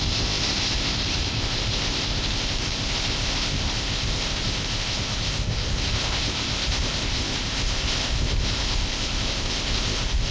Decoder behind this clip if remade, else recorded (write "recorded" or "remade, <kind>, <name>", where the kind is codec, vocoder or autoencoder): remade, codec, ZipCodec